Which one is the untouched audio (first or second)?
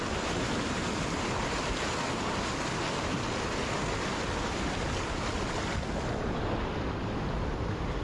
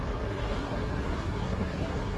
first